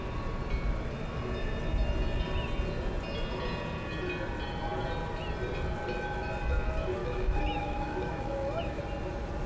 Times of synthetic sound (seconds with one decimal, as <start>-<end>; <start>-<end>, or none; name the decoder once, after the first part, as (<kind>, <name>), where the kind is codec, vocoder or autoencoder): 7.0-8.8 (autoencoder, DAC-VAE)